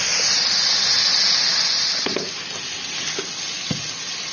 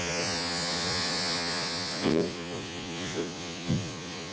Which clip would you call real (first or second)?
first